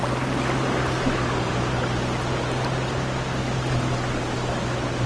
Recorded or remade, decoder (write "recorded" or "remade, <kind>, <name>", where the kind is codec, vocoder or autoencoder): recorded